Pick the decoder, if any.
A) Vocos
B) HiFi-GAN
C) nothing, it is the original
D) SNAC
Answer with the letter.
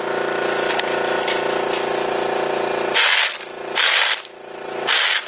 C